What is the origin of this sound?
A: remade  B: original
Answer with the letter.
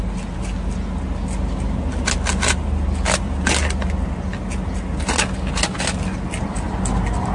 B